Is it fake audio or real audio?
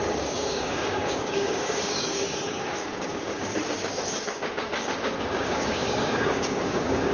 fake